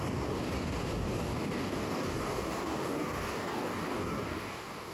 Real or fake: fake